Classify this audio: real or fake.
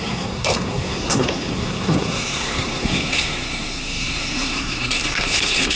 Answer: fake